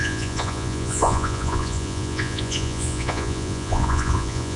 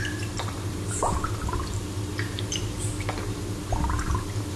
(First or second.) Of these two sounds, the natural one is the second